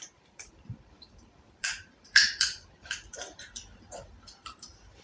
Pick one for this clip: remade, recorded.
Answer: remade